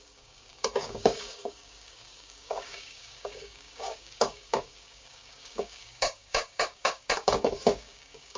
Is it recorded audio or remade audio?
remade